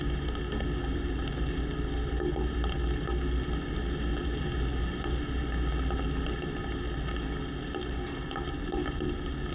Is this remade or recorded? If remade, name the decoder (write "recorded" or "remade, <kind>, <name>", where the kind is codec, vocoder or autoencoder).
recorded